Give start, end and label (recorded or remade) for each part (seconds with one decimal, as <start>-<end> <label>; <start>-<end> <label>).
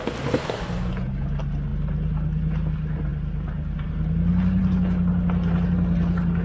0.0-6.4 recorded